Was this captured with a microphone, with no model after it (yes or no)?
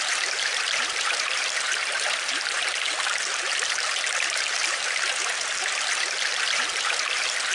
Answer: no